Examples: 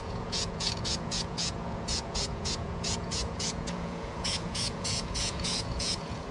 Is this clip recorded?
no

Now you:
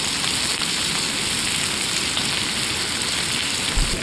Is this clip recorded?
yes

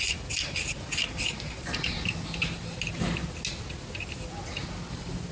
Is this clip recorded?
yes